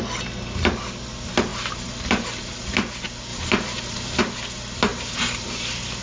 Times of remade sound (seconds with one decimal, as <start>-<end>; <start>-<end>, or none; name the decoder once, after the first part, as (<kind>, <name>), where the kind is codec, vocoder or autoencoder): 1.5-2.6 (vocoder, BigVGAN v2); 3.3-4.2; 4.9-5.6